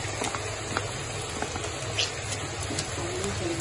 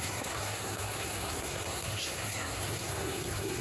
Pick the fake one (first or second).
second